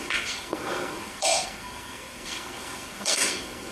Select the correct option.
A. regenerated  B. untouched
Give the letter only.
A